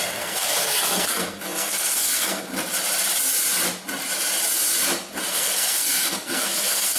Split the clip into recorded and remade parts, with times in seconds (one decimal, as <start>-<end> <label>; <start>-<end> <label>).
0.0-2.5 remade; 2.5-5.3 recorded; 5.3-7.0 remade